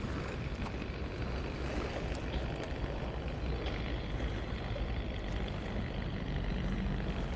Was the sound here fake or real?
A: real